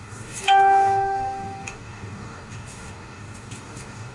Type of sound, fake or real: fake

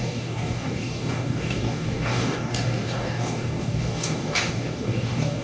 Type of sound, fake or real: fake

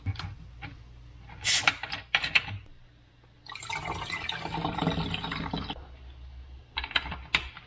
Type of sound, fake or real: real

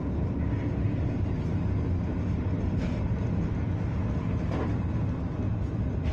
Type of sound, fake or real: real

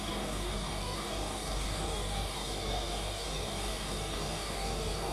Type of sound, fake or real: fake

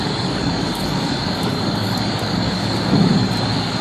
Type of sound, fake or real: fake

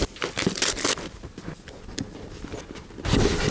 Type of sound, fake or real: real